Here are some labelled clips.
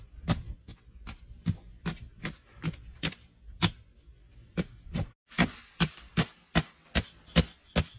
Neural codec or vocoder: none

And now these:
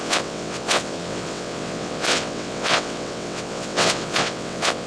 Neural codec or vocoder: vocoder, WaveNeXt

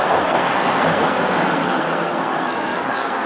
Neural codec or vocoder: codec, SNAC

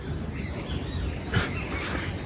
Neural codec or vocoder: none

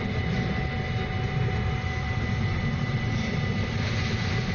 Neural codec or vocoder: none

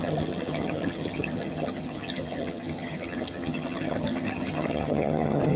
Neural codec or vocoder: vocoder, HiFi-GAN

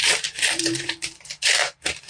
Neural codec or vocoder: vocoder, BigVGAN v2